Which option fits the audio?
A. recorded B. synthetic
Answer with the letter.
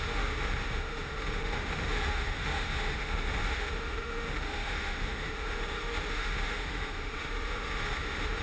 B